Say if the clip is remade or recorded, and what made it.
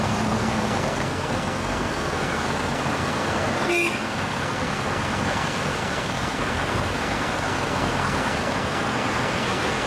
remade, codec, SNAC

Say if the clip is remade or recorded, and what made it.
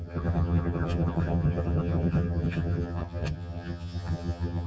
remade, vocoder, HiFi-GAN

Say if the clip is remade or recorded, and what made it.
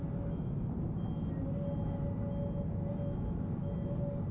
recorded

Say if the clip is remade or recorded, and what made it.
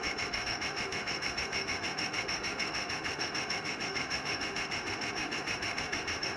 remade, autoencoder, DAC-VAE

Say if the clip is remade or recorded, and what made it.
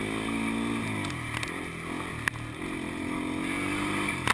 recorded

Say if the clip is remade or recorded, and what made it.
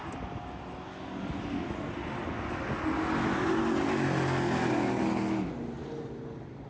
recorded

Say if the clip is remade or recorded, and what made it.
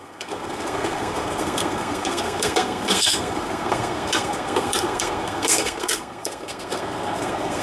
remade, codec, SNAC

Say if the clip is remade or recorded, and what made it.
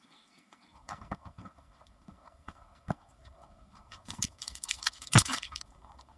remade, codec, SNAC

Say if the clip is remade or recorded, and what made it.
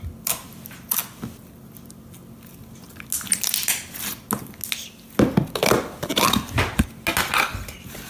recorded